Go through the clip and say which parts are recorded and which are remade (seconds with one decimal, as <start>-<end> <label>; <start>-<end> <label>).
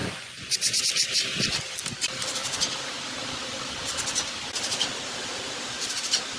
0.0-0.8 remade; 0.8-6.4 recorded